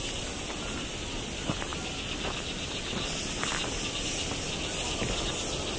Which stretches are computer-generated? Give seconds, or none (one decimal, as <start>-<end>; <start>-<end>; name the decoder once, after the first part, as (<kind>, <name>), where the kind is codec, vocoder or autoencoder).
none